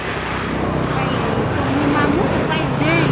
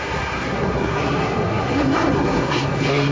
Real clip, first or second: first